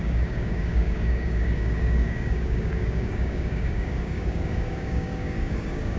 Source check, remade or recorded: remade